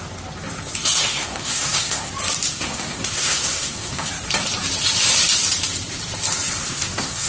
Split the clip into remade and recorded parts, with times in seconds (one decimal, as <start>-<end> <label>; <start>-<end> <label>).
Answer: 0.0-1.1 recorded; 1.1-2.1 remade; 2.1-2.5 recorded; 2.5-4.1 remade; 4.1-6.6 recorded; 6.6-7.3 remade